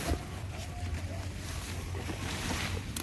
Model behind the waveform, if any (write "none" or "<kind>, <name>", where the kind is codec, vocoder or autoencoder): none